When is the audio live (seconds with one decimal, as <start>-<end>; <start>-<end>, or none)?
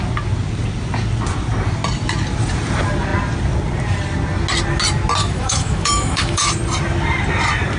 0.0-5.2; 6.5-7.8